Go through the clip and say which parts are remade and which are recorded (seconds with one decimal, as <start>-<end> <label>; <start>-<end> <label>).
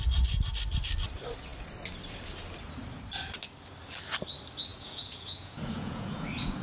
0.0-4.7 recorded; 4.7-6.6 remade